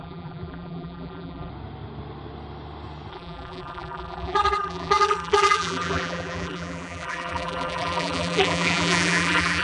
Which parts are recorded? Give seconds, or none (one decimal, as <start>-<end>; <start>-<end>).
1.5-3.1